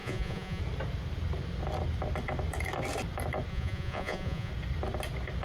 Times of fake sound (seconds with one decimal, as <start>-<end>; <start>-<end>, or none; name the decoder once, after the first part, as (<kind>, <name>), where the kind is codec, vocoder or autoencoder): 0.0-0.6 (vocoder, Vocos); 3.5-4.5